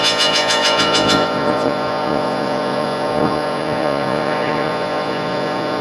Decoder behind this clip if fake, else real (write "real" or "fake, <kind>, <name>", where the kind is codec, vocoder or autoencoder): fake, vocoder, Vocos